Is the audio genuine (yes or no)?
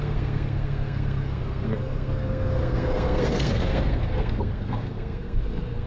no